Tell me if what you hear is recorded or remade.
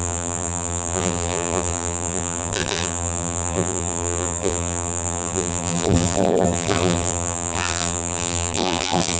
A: remade